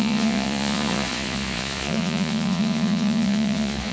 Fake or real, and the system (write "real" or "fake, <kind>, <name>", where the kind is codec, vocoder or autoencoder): fake, vocoder, Vocos